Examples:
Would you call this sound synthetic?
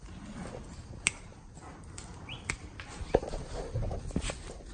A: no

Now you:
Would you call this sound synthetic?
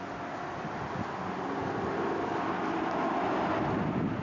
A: no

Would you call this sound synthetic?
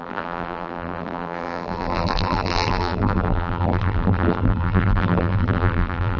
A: yes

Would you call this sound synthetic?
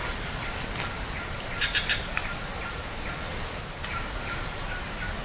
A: no